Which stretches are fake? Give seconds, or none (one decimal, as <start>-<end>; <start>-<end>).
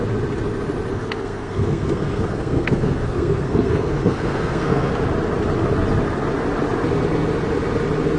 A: 0.9-4.9